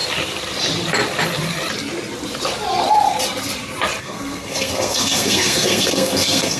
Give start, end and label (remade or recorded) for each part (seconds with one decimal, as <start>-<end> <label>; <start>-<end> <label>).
0.0-4.0 recorded; 4.0-6.6 remade